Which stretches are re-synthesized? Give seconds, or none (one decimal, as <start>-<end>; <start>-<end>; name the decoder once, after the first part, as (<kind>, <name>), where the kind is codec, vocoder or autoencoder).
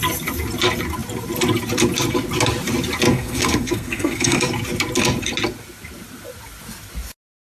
3.1-4.4 (codec, SNAC)